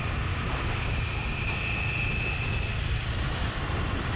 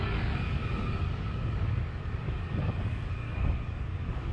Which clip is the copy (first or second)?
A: second